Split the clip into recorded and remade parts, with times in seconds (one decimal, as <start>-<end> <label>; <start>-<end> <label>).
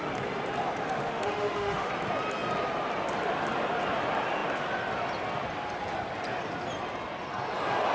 0.0-0.8 recorded; 0.8-1.9 remade; 1.9-7.9 recorded